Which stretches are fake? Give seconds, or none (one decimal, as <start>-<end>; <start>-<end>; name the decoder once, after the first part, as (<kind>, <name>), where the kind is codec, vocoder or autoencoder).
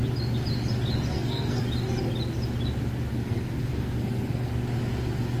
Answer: 1.1-1.6 (codec, SNAC); 3.1-4.5